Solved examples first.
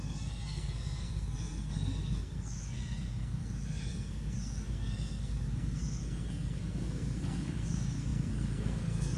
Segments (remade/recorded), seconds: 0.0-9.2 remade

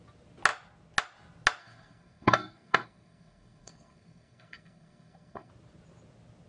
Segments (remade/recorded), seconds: 0.0-1.6 recorded; 1.6-5.5 remade; 5.5-6.5 recorded

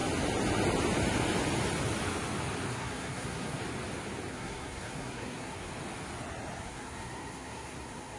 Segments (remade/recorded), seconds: 0.0-2.7 recorded; 2.7-3.6 remade; 3.6-4.3 recorded; 4.3-5.7 remade; 5.7-6.6 recorded; 6.6-8.2 remade

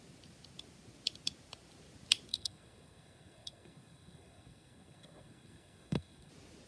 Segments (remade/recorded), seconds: 0.0-2.3 recorded; 2.3-6.3 remade; 6.3-6.7 recorded

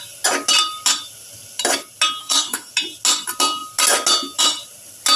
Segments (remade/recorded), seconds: 0.0-2.2 recorded; 2.2-2.7 remade; 2.7-5.2 recorded

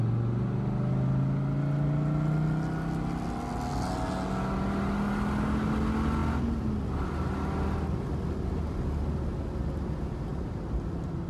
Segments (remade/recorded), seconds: 0.0-11.3 recorded

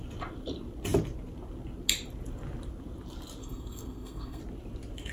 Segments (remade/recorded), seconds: 0.0-3.4 recorded; 3.4-4.4 remade; 4.4-5.1 recorded